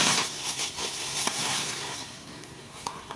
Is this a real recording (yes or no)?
no